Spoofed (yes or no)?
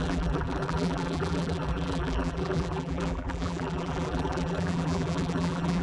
yes